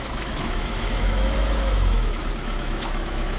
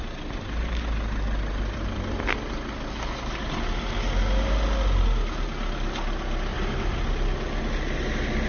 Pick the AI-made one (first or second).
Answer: first